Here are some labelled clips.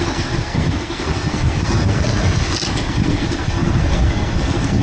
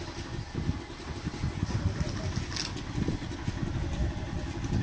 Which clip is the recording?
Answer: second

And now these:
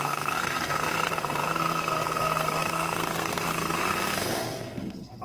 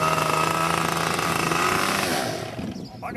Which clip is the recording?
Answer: second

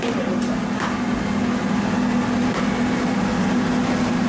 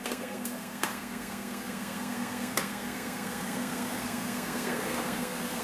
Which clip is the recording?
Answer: first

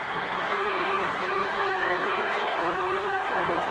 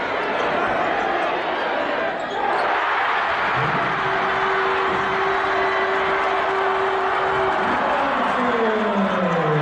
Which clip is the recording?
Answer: second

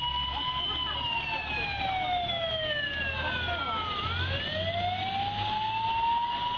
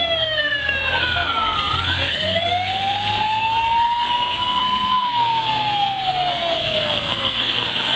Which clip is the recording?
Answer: first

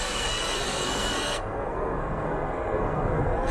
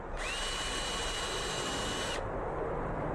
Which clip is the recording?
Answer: second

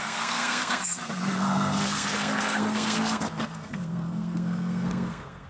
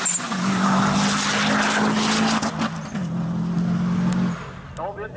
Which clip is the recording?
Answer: second